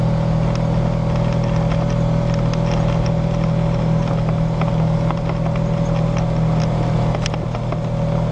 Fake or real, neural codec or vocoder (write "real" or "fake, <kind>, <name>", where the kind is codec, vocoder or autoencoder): real